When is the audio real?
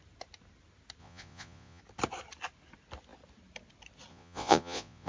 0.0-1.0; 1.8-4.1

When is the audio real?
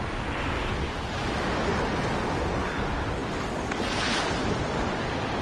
0.0-5.4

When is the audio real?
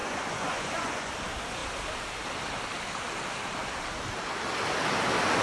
1.1-5.4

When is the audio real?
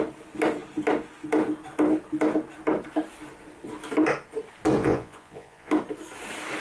0.0-4.8; 5.7-6.6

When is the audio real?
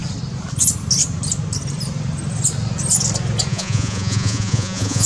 0.0-3.5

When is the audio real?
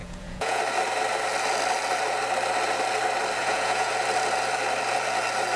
0.6-3.4; 3.9-5.6